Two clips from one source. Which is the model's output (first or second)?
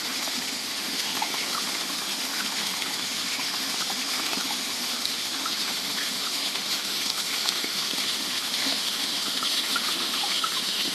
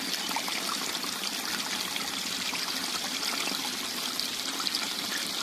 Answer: first